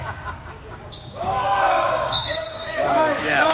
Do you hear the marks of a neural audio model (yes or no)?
yes